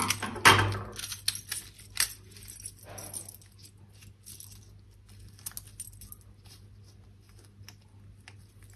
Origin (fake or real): real